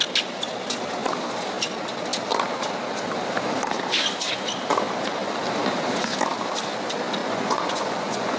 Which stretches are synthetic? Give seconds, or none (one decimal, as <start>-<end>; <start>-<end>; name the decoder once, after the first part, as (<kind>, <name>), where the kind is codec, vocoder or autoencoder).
7.2-8.4 (vocoder, Vocos)

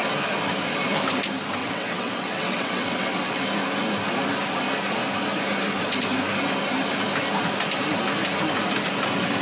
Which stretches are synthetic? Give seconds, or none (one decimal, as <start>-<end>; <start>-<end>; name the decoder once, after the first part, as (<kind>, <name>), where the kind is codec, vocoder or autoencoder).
1.6-3.4 (vocoder, WaveNeXt)

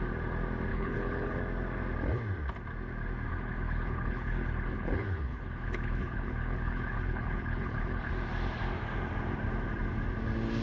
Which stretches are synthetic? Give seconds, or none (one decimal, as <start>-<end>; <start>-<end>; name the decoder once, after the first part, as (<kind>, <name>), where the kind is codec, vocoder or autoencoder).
0.7-1.4 (codec, HILCodec); 3.3-8.1